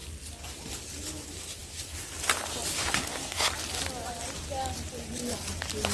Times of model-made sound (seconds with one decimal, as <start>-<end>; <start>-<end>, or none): 2.8-3.5